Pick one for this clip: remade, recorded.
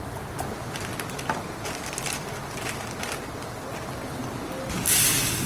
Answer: recorded